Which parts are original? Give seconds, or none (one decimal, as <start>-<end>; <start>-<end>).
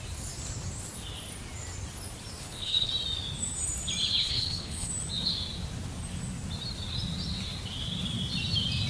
0.0-2.4; 2.9-4.2; 4.9-8.9